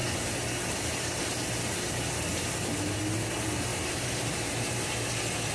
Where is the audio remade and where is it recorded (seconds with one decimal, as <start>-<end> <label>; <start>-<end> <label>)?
0.0-3.7 recorded; 3.7-5.1 remade; 5.1-5.5 recorded